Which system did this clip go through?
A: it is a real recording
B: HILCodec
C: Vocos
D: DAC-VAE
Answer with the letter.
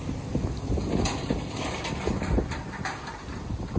A